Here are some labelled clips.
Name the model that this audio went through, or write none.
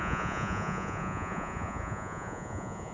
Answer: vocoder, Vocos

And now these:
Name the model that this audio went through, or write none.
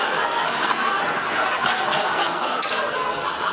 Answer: codec, SNAC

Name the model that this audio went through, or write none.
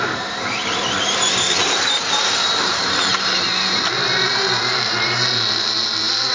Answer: vocoder, BigVGAN v2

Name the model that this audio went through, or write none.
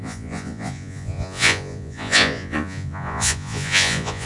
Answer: vocoder, Vocos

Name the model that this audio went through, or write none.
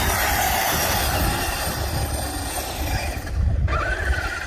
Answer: none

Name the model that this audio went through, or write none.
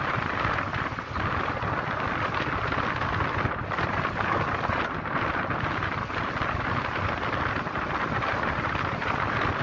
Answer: none